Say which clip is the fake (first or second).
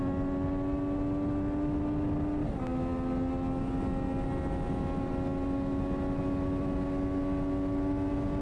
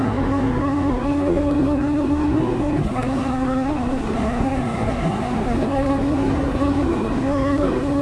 second